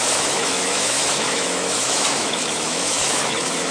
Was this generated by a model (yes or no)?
yes